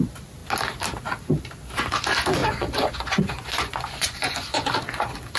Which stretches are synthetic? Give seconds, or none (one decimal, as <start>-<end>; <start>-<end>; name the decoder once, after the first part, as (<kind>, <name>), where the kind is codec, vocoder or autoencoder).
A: 2.4-4.7 (vocoder, Vocos)